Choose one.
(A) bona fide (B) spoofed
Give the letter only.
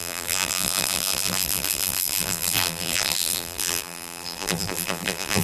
B